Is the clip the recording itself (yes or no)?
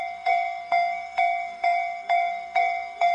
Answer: no